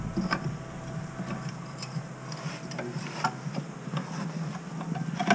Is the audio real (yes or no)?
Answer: yes